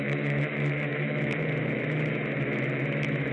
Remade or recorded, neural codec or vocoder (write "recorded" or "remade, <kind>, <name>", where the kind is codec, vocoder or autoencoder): remade, autoencoder, DAC-VAE